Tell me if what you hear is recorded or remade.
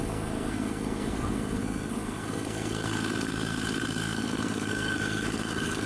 remade